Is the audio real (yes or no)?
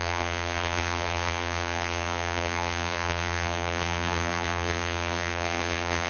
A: no